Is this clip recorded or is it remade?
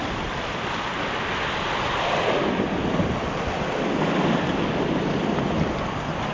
recorded